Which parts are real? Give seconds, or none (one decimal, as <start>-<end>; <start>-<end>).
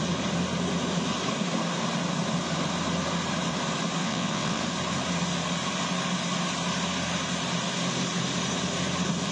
0.0-4.0; 4.6-9.3